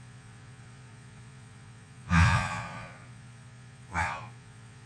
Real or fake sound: fake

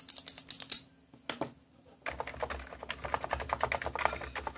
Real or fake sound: real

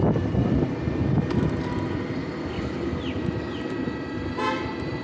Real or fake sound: real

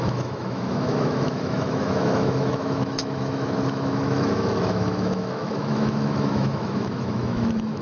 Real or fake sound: fake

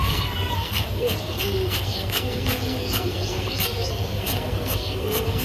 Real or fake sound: fake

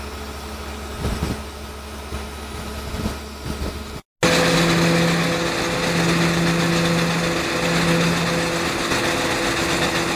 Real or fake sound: real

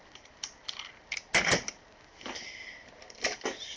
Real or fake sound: real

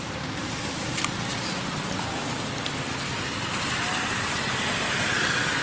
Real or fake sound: real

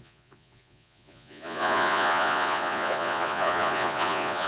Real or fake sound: fake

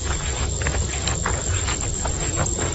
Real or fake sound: real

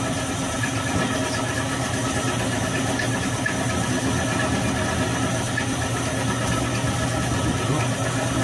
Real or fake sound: real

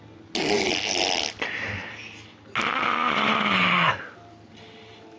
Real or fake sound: real